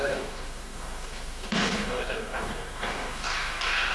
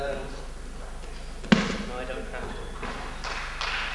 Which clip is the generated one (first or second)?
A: first